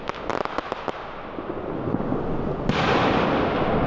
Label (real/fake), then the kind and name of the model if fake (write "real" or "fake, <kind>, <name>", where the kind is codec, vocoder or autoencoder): real